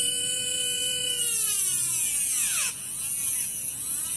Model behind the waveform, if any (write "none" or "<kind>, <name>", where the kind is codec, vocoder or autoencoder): vocoder, Vocos